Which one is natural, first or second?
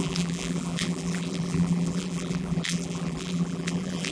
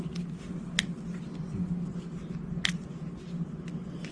second